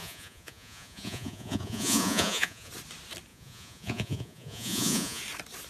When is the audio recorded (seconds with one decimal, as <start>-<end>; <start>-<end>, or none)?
2.7-3.3; 5.2-5.7